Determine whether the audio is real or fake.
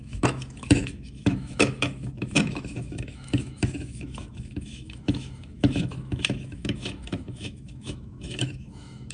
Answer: fake